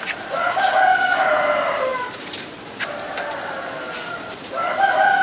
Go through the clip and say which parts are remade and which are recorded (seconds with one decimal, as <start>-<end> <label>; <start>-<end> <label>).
0.0-5.2 recorded